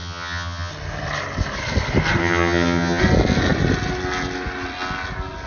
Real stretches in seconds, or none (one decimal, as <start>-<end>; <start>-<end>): 0.7-2.2; 3.0-5.5

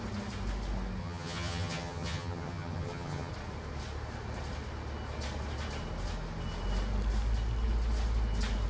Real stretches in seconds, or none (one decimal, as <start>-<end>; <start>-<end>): 0.0-1.0; 3.3-8.7

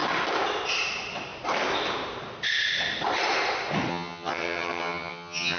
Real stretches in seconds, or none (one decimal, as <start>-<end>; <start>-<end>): 0.0-3.9

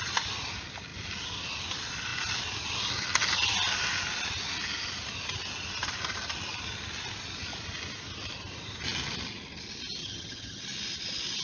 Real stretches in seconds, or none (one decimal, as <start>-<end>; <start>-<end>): 0.0-10.0; 10.6-11.4

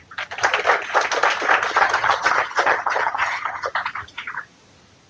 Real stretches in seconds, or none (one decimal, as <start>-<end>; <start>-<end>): 0.0-1.7; 3.7-5.1